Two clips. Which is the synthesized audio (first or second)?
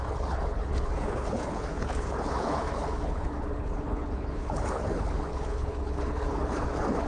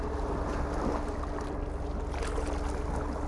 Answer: first